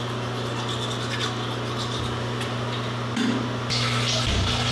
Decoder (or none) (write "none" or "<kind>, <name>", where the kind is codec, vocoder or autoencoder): none